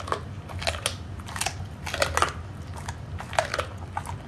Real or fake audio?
real